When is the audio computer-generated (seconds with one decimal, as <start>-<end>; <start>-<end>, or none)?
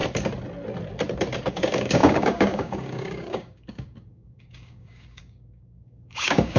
1.5-6.6